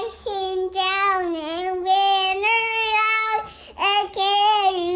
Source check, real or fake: fake